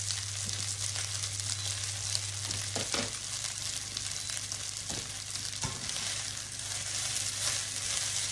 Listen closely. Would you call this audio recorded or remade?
recorded